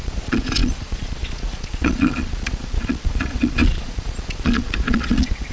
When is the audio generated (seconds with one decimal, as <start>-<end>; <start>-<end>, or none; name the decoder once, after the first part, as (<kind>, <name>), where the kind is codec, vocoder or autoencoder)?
0.0-5.5 (vocoder, Vocos)